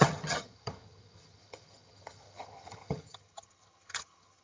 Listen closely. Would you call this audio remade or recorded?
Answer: remade